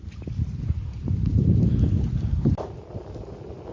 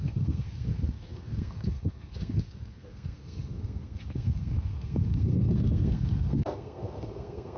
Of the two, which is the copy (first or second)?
second